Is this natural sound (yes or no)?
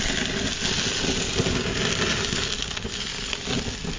yes